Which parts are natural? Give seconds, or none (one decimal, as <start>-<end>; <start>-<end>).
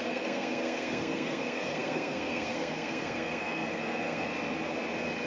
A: 4.3-5.3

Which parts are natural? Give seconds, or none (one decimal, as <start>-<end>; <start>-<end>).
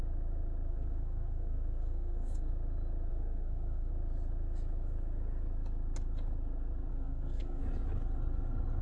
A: 0.0-0.7; 2.5-3.1; 3.9-6.9; 7.6-8.8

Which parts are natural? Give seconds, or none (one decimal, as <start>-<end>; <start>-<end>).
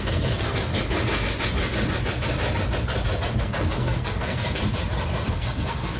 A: 0.7-3.4; 4.6-5.3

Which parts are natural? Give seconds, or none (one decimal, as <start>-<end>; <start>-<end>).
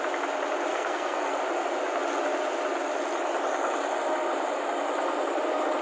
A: 0.0-0.7; 1.4-5.8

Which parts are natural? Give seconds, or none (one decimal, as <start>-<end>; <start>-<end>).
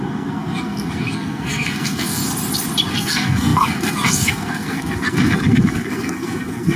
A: 2.2-2.9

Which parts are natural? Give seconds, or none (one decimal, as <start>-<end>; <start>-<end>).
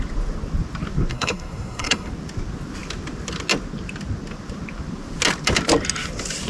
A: 0.0-1.1; 2.1-6.5